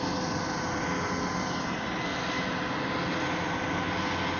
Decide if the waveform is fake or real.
real